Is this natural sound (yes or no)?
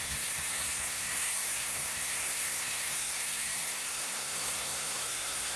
no